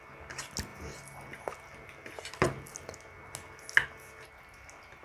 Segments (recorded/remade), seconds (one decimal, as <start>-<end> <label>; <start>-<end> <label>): 0.0-5.0 recorded